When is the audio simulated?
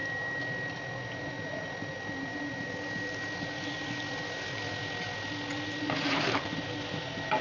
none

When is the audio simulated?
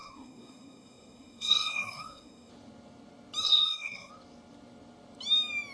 0.0-2.5 (codec, SNAC); 3.4-4.1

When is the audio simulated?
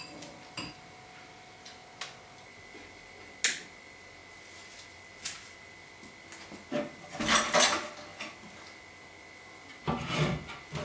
none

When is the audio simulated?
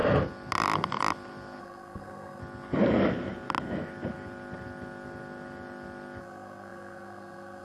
1.6-2.4 (codec, SNAC); 6.2-7.6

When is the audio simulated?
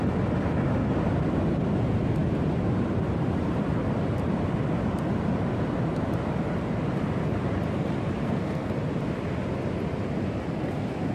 8.2-8.7 (codec, SNAC)